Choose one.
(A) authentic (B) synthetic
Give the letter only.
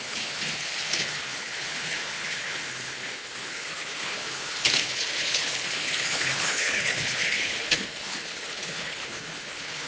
B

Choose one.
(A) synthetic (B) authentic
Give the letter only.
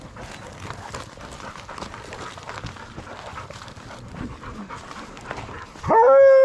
B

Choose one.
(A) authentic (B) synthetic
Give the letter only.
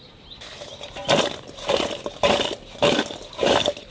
A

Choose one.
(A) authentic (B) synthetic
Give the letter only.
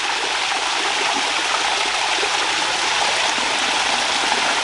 A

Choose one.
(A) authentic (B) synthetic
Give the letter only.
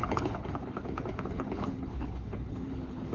B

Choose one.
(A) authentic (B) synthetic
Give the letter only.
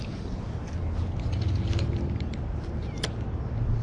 A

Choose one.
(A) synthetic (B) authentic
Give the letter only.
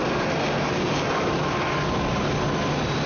B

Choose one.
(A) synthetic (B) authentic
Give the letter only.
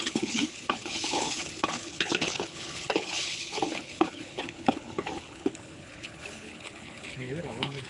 A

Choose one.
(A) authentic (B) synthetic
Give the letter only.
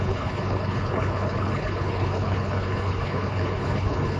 B